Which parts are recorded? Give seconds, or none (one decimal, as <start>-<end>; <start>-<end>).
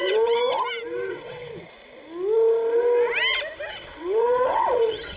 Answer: 0.4-1.1; 1.5-3.7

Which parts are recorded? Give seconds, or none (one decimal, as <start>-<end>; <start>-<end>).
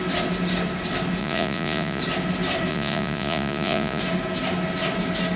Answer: 0.0-1.2; 2.0-2.7; 4.0-5.4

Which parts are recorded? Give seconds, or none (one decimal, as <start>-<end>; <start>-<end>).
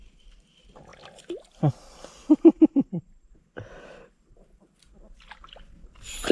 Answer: 0.0-6.3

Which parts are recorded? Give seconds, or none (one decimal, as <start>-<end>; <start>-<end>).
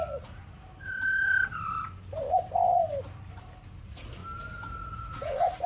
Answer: 0.4-3.8; 4.2-5.1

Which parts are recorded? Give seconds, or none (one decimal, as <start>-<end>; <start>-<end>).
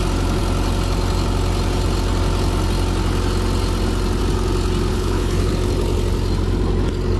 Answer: 0.0-4.9; 5.5-7.2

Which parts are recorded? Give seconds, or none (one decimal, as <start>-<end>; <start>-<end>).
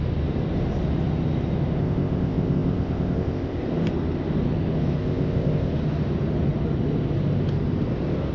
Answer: 0.0-1.8; 3.6-5.0; 5.7-8.3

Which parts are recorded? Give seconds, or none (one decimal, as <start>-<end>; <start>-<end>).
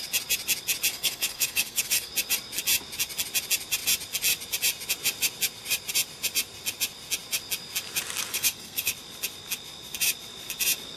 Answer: 0.0-0.9; 2.1-8.3; 8.9-11.0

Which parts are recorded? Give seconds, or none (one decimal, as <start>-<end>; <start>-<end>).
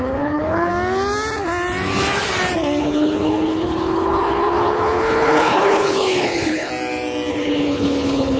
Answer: 0.7-2.8; 6.7-7.3